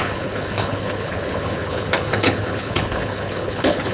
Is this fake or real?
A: fake